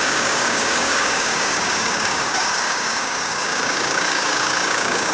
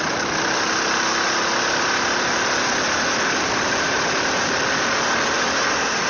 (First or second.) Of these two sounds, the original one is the second